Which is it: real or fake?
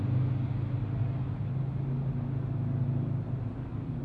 real